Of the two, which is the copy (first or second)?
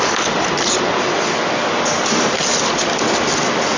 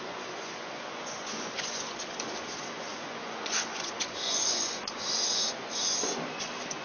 second